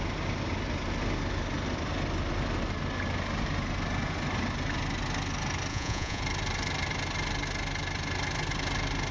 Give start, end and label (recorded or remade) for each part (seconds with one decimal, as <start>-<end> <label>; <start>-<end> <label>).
0.0-5.7 recorded; 5.7-6.2 remade; 6.2-9.1 recorded